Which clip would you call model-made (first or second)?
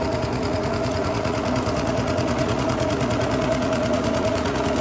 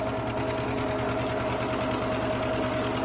first